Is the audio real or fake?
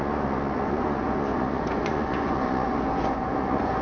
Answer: fake